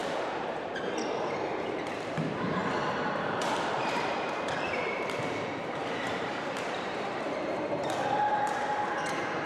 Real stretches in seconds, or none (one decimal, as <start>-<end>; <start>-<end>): none